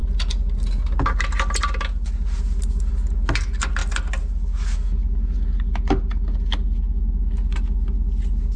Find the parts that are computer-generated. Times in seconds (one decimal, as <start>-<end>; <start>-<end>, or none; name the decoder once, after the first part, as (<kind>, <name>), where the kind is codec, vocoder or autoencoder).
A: none